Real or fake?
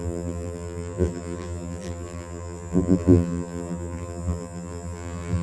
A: fake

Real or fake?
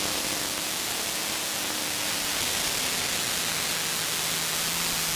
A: real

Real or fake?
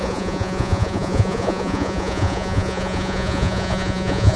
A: fake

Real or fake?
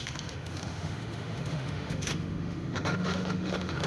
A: fake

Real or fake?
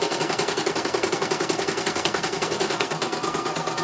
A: fake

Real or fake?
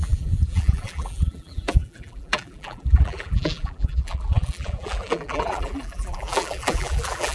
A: fake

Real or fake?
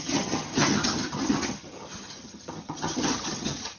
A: fake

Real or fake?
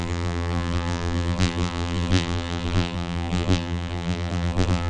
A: fake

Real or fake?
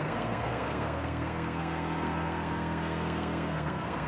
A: fake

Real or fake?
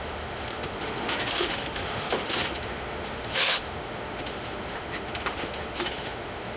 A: fake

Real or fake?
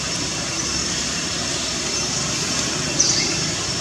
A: fake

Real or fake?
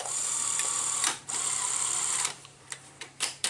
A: fake